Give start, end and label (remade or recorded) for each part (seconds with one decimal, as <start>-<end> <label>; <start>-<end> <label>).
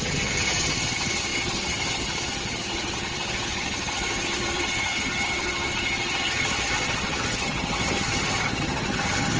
0.0-9.4 remade